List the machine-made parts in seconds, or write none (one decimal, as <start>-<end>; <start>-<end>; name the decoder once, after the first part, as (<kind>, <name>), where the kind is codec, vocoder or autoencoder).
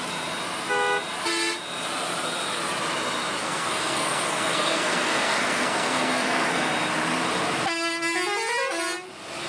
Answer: 3.4-6.7 (codec, SNAC)